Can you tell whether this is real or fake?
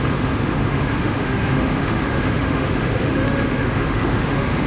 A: fake